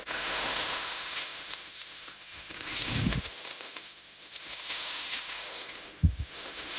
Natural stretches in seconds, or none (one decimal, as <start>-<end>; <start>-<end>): none